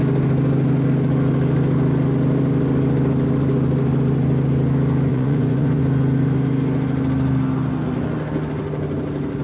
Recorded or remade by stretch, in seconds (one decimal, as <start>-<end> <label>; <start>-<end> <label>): 0.0-5.1 recorded; 5.1-5.8 remade; 5.8-9.4 recorded

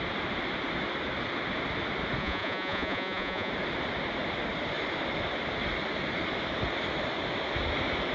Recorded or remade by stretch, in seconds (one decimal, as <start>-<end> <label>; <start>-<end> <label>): 0.0-2.2 recorded; 2.2-3.5 remade; 3.5-8.1 recorded

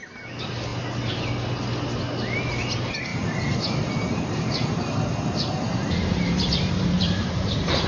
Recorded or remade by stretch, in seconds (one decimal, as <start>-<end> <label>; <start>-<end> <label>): 0.0-3.1 recorded; 3.1-7.9 remade

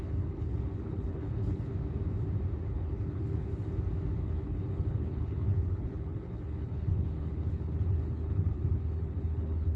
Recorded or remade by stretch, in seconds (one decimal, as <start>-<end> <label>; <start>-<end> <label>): 0.0-1.7 remade; 1.7-2.7 recorded; 2.7-3.5 remade; 3.5-4.2 recorded; 4.2-9.8 remade

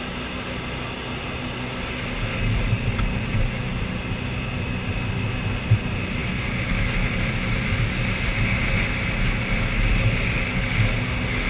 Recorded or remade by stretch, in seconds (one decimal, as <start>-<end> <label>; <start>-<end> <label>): 0.0-11.5 recorded

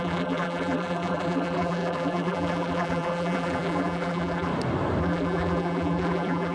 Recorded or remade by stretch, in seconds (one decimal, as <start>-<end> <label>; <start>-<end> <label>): 0.0-4.5 remade; 4.5-5.0 recorded; 5.0-6.5 remade

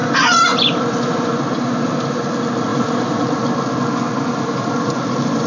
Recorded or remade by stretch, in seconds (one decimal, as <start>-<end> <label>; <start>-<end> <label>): 0.0-2.7 recorded; 2.7-3.4 remade; 3.4-5.5 recorded

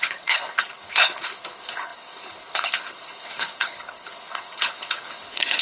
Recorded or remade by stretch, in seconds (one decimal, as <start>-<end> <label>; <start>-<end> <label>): 0.0-5.6 remade